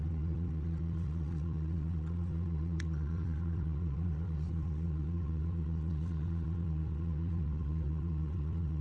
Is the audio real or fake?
fake